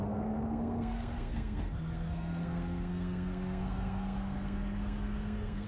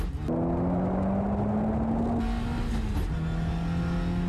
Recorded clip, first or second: second